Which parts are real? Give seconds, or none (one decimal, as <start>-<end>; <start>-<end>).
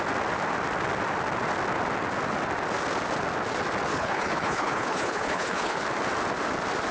0.0-3.9; 5.8-6.9